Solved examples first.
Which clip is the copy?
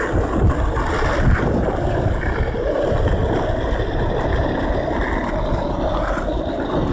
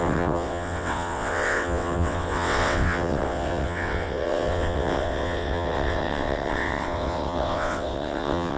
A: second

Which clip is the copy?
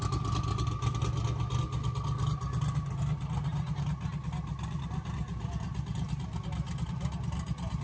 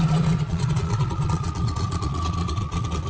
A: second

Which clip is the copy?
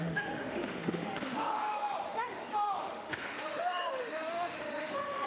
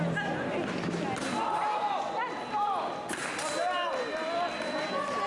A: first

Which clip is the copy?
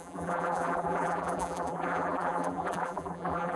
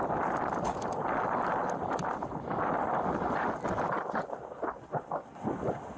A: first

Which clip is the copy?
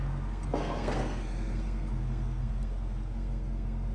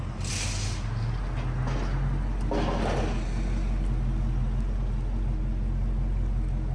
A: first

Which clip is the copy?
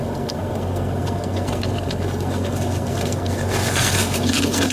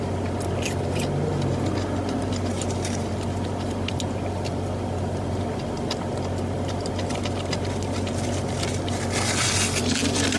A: first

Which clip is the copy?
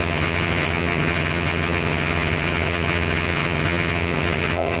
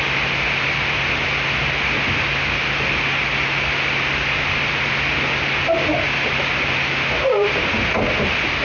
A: first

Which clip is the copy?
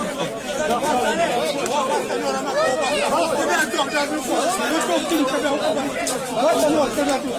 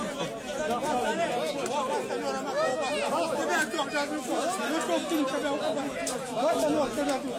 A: first